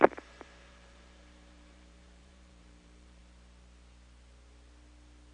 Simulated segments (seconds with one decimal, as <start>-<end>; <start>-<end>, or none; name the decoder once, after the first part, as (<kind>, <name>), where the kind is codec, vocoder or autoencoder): 0.0-3.2 (vocoder, BigVGAN v2)